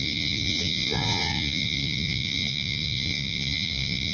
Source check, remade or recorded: remade